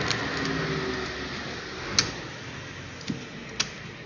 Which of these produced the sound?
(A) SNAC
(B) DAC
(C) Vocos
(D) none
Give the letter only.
D